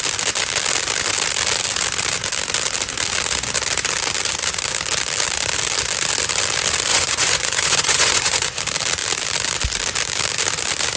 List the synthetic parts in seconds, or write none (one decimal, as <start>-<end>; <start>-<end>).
6.9-8.6